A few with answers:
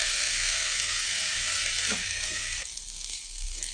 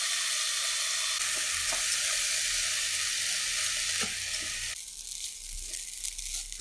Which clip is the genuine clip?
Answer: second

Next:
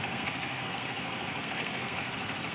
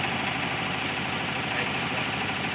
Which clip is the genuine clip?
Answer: second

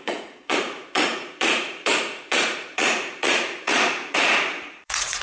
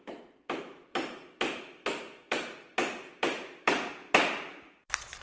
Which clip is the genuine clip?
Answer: second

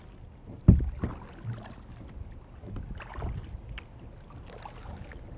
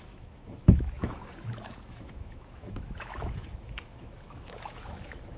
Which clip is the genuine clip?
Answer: first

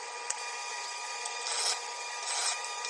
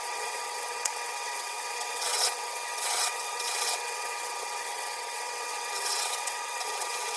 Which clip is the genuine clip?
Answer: first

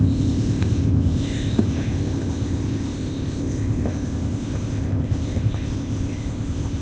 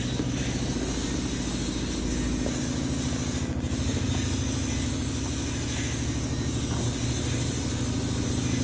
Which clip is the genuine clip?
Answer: second